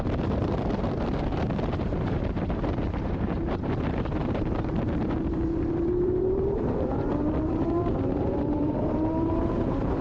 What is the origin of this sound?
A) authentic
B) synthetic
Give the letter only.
B